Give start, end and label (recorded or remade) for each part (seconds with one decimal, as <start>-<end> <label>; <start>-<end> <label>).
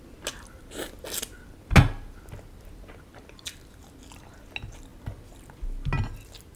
0.0-6.6 recorded